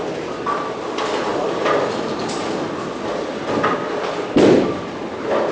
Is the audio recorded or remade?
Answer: recorded